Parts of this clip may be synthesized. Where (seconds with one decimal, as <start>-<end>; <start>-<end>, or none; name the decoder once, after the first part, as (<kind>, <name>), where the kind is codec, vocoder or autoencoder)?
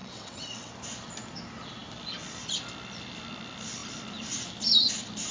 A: 0.0-0.7 (vocoder, WaveNeXt)